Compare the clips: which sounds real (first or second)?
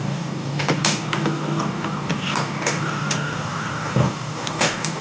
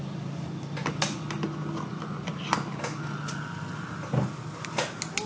second